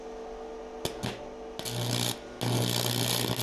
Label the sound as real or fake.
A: real